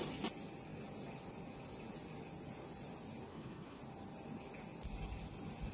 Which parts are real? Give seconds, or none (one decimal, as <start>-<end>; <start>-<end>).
0.0-3.3; 3.8-5.7